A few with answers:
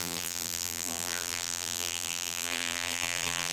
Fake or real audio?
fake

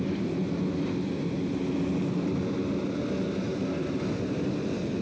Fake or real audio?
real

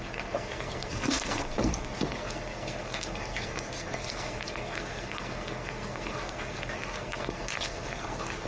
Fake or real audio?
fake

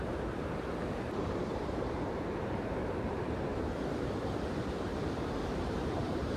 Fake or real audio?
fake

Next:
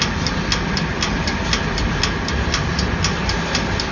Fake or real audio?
real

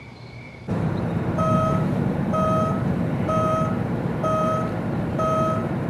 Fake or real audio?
fake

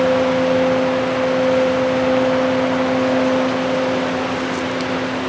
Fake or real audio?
real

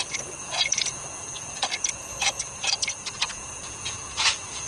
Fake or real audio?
fake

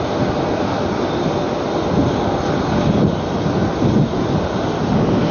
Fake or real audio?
real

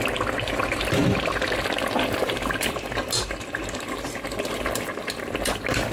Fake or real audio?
real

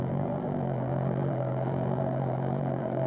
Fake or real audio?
fake